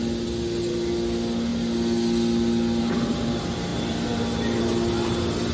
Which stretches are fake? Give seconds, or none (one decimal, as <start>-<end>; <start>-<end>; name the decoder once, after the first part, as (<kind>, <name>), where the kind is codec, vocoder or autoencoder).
none